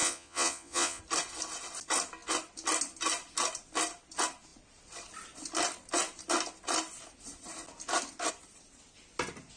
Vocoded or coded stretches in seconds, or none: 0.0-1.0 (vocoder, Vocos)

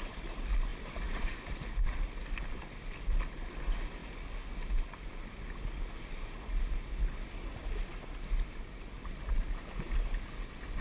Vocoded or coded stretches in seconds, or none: 0.7-1.7 (vocoder, BigVGAN v2)

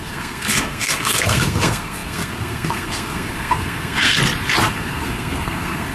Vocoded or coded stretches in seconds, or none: 0.0-4.2 (codec, SNAC); 4.7-5.9

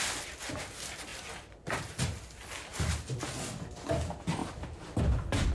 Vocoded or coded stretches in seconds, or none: 1.1-1.8 (vocoder, BigVGAN v2); 4.4-5.5

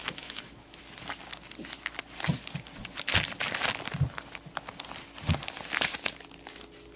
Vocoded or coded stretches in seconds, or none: 0.0-0.8 (autoencoder, DAC-VAE)

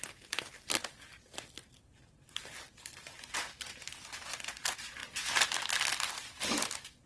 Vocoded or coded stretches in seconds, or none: none

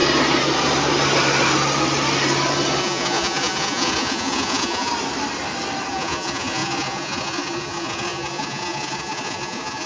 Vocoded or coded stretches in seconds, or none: 2.8-4.9 (vocoder, Vocos); 5.9-9.9